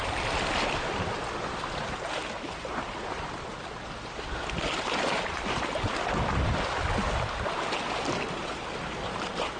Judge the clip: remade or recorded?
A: recorded